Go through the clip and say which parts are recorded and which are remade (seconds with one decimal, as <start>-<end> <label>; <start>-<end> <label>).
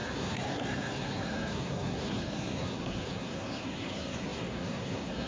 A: 0.0-5.3 remade